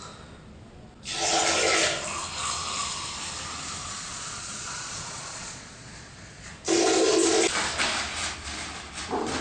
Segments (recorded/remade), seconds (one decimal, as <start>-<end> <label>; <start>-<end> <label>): 0.0-3.8 recorded; 3.8-6.5 remade; 6.5-9.4 recorded

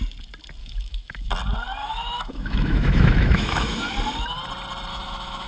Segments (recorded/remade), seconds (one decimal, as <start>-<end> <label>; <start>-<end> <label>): 0.0-0.6 recorded; 0.6-1.3 remade; 1.3-1.8 recorded; 1.8-3.9 remade; 3.9-4.9 recorded; 4.9-5.5 remade

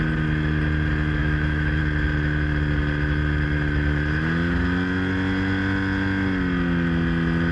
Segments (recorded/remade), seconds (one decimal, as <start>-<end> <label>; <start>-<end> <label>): 0.0-1.2 recorded; 1.2-1.8 remade; 1.8-7.5 recorded

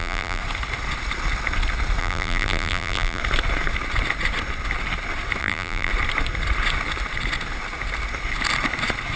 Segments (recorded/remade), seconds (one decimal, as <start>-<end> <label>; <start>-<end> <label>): 0.0-0.4 remade; 0.4-2.0 recorded; 2.0-3.2 remade; 3.2-5.4 recorded; 5.4-5.9 remade; 5.9-9.2 recorded

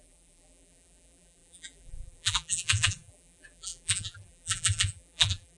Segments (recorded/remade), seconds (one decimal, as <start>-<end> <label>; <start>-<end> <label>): 0.0-5.6 remade

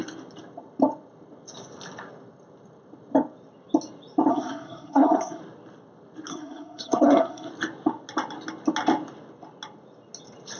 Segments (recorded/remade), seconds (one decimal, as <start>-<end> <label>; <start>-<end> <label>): 0.0-4.3 recorded; 4.3-5.4 remade; 5.4-6.3 recorded; 6.3-7.5 remade; 7.5-10.6 recorded

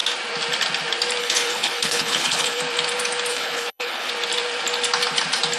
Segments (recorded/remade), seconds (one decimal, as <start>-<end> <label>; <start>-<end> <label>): 0.0-1.2 recorded; 1.2-2.6 remade; 2.6-3.3 recorded; 3.3-4.1 remade; 4.1-5.6 recorded

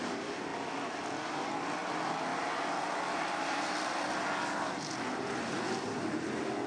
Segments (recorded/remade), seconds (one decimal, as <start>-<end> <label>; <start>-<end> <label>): 0.0-6.7 recorded